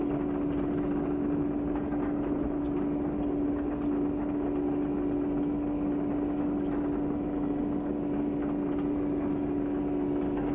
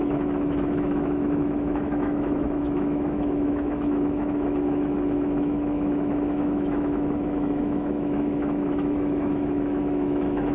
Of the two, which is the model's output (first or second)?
second